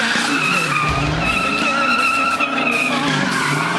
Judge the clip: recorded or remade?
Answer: recorded